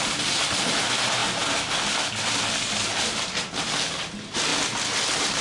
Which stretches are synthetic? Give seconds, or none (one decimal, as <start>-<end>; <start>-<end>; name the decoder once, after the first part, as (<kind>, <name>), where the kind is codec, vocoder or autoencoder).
none